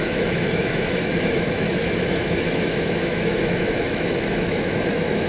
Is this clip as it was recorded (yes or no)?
no